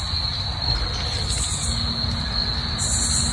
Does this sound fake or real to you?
real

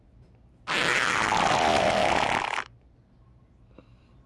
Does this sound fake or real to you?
real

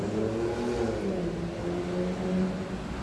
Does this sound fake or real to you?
real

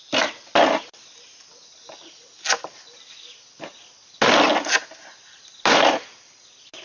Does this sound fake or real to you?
real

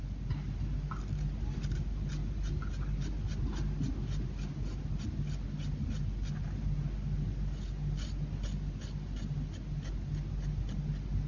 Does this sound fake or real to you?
real